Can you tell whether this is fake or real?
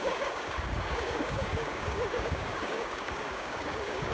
fake